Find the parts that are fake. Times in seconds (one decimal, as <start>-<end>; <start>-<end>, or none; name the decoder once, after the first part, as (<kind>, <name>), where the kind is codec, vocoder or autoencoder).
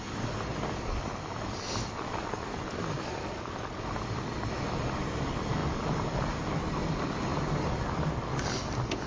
none